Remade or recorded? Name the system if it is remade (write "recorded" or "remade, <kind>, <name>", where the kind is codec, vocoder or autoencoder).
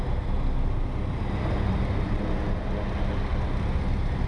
recorded